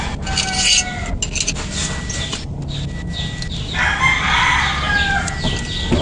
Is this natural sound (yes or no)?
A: yes